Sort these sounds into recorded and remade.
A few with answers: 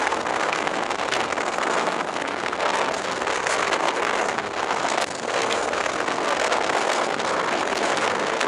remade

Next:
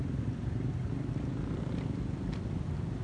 recorded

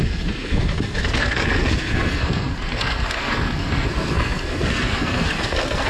remade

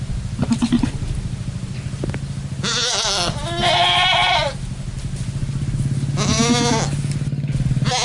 recorded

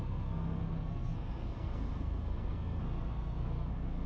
remade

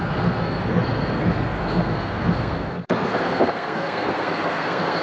remade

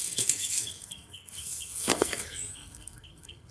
remade